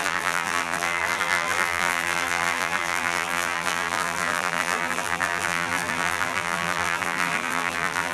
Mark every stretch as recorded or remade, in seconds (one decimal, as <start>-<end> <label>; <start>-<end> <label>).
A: 0.0-8.1 remade